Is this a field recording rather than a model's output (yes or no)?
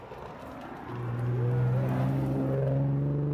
yes